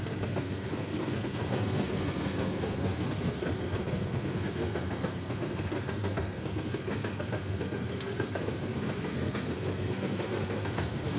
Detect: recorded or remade remade